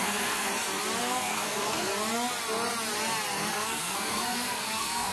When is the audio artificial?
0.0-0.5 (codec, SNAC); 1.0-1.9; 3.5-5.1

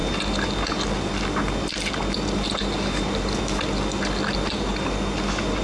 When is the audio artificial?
none

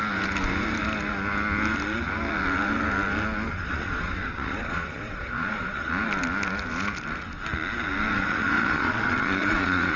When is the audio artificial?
3.5-5.9 (vocoder, Vocos); 8.1-10.0

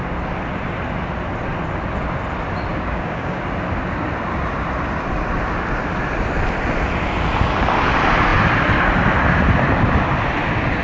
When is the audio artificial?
2.7-3.4 (codec, DAC)

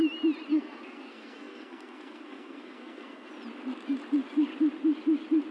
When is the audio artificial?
0.5-3.3 (codec, SNAC)

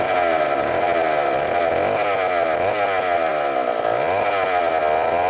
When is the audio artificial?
none

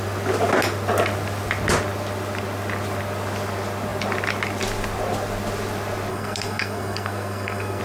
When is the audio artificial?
6.1-7.8 (codec, SNAC)